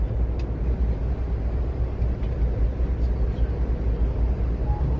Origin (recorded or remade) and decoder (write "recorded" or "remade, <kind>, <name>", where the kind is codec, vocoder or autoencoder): recorded